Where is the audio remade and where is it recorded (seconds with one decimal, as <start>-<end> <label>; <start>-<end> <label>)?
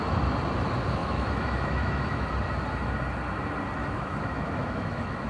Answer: 0.0-1.0 recorded; 1.0-2.3 remade; 2.3-3.8 recorded; 3.8-5.3 remade